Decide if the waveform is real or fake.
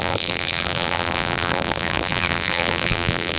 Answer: fake